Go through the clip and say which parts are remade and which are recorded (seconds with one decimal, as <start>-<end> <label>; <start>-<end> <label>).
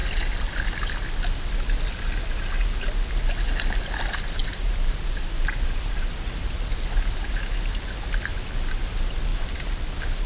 0.0-4.4 recorded; 4.4-6.1 remade; 6.1-10.3 recorded